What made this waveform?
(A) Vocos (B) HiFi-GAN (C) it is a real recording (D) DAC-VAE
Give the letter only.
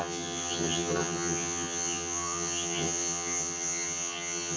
B